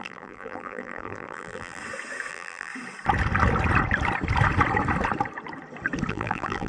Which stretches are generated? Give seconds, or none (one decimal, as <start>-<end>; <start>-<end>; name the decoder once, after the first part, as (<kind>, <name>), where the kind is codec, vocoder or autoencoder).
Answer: 0.0-1.8 (vocoder, BigVGAN v2); 2.3-2.7; 6.1-6.7

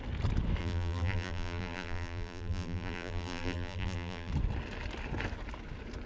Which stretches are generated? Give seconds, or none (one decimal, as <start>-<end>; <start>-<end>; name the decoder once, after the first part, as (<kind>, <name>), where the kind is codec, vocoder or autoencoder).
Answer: 0.6-4.3 (vocoder, BigVGAN v2)

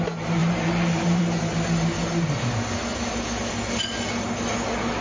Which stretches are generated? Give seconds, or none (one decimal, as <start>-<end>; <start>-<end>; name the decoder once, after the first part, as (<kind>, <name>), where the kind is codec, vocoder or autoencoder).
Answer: 0.4-1.2 (vocoder, BigVGAN v2); 2.0-2.5

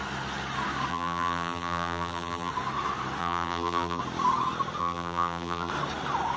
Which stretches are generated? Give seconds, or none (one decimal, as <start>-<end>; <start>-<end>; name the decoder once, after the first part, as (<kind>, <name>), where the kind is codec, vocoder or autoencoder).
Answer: 0.9-2.5 (vocoder, BigVGAN v2); 3.2-4.0; 4.8-5.7

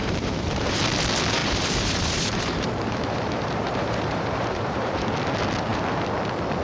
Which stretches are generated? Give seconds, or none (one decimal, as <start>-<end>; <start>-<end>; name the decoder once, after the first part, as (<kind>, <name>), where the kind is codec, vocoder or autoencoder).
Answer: 0.0-0.8 (vocoder, BigVGAN v2); 1.4-5.1